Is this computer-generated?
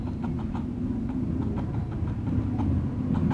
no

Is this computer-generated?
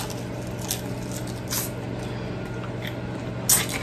no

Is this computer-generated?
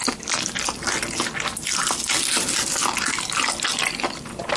no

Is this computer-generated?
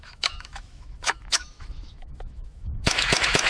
yes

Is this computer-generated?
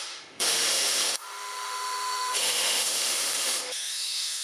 yes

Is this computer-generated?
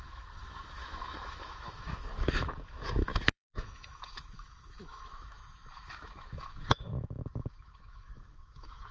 yes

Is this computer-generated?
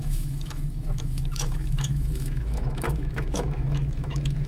yes